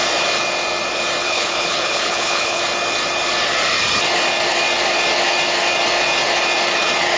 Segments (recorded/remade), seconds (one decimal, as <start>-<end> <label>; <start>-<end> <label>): 0.0-1.2 recorded; 1.2-2.6 remade; 2.6-7.2 recorded